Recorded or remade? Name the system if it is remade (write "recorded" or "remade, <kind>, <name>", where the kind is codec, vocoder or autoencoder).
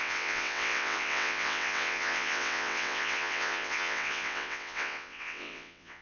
remade, vocoder, WaveNeXt